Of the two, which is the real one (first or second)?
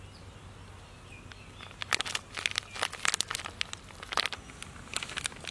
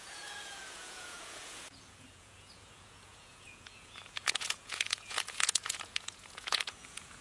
first